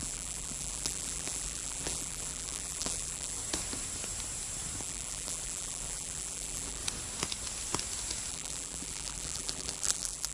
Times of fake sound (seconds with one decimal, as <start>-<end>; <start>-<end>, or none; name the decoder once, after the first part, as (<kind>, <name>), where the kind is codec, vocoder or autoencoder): 0.0-3.4 (vocoder, BigVGAN v2); 4.8-6.8; 8.3-10.3